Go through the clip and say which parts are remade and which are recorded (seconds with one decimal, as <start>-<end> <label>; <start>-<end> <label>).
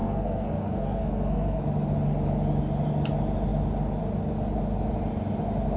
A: 0.0-1.6 remade; 1.6-5.8 recorded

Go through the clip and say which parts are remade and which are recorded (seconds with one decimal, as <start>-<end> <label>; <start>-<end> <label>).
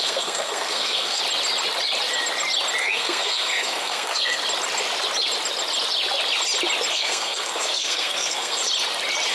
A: 0.0-1.2 remade; 1.2-2.8 recorded; 2.8-4.4 remade; 4.4-6.9 recorded; 6.9-8.6 remade; 8.6-9.3 recorded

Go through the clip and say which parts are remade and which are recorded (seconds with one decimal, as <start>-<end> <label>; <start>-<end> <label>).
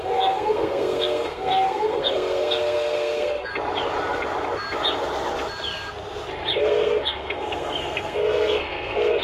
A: 0.0-3.5 remade; 3.5-6.6 recorded; 6.6-9.2 remade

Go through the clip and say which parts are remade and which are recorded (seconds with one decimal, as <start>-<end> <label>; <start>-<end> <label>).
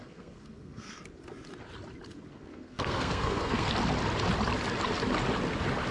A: 0.0-1.0 remade; 1.0-2.3 recorded; 2.3-3.7 remade; 3.7-5.9 recorded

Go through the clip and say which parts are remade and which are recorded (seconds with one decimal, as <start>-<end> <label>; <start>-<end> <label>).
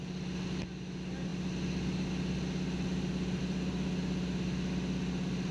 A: 0.0-5.5 recorded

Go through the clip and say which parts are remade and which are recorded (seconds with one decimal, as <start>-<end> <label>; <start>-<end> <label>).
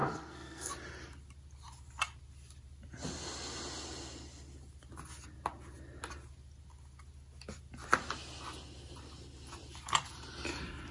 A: 0.0-0.7 remade; 0.7-10.9 recorded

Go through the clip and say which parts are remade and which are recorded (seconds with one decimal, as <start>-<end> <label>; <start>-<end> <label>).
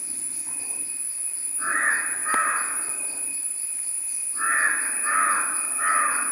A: 0.0-6.3 recorded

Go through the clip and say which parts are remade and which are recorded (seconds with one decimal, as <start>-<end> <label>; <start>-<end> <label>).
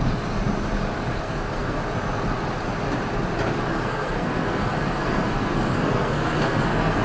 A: 0.0-1.1 recorded; 1.1-1.8 remade; 1.8-3.7 recorded; 3.7-7.0 remade